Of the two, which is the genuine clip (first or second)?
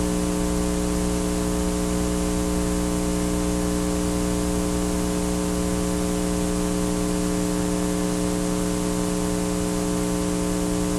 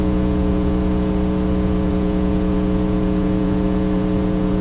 first